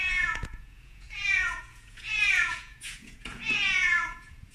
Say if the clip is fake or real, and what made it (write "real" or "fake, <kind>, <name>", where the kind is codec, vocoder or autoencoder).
fake, vocoder, Vocos